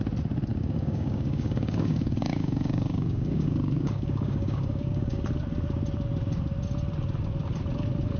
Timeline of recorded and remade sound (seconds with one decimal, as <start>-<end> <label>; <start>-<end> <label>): 0.0-0.5 recorded; 0.5-5.2 remade; 5.2-8.2 recorded